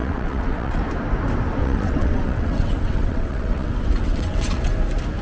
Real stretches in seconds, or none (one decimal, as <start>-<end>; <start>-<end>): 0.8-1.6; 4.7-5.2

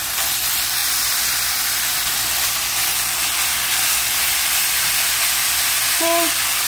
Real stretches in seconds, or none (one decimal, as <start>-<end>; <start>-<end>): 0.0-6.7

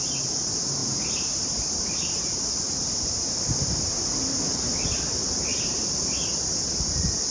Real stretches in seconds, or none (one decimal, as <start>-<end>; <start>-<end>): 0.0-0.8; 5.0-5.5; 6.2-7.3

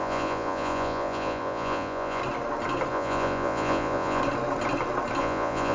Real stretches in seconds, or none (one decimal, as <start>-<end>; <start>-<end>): 2.2-2.9; 4.2-5.2

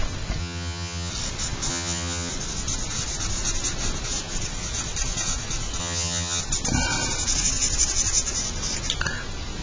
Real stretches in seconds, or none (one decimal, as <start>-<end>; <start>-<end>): 0.0-0.4; 1.1-1.7; 2.3-5.8; 6.4-9.6